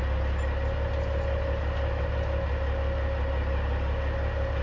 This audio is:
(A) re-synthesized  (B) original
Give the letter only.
B